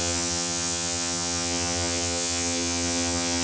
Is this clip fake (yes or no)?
yes